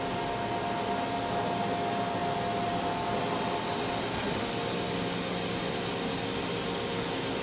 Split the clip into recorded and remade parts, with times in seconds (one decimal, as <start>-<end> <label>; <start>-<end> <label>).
0.0-7.4 recorded

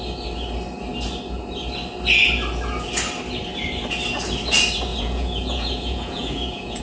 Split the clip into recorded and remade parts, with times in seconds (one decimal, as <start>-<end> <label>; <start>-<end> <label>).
0.0-4.9 recorded; 4.9-6.8 remade

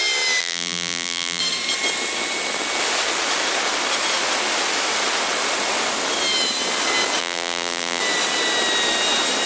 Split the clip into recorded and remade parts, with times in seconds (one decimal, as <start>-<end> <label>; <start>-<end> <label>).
0.0-0.4 recorded; 0.4-1.4 remade; 1.4-7.2 recorded; 7.2-8.0 remade; 8.0-9.5 recorded

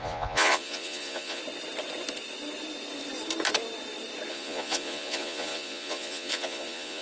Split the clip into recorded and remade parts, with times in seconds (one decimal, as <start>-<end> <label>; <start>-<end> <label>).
0.0-1.4 remade; 1.4-4.3 recorded; 4.3-7.0 remade

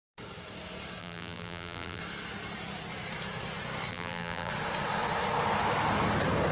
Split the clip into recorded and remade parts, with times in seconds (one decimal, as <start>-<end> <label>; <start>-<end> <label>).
0.0-1.0 recorded; 1.0-2.0 remade; 2.0-3.9 recorded; 3.9-4.5 remade; 4.5-6.5 recorded

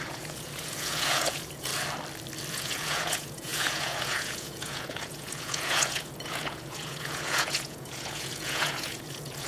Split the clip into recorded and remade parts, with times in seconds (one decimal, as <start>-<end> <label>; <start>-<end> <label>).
0.0-1.7 remade; 1.7-2.5 recorded; 2.5-9.5 remade

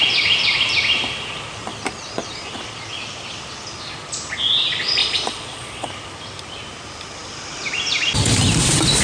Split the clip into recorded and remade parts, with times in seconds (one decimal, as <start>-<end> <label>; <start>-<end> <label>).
0.0-5.0 recorded; 5.0-5.9 remade; 5.9-9.0 recorded

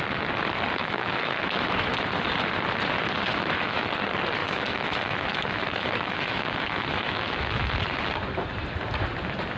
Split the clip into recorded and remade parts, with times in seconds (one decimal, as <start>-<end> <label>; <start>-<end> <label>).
0.0-0.8 recorded; 0.8-1.9 remade; 1.9-3.3 recorded; 3.3-3.9 remade; 3.9-4.4 recorded; 4.4-7.7 remade; 7.7-9.6 recorded